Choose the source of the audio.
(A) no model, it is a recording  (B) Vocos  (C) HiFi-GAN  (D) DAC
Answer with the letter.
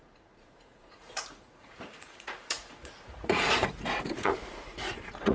B